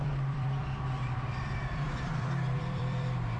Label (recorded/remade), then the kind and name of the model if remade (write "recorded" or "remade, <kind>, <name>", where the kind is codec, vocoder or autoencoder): remade, vocoder, BigVGAN v2